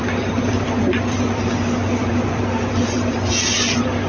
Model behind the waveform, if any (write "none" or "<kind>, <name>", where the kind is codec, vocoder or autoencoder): vocoder, BigVGAN v2